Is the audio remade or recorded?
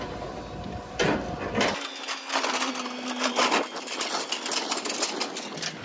recorded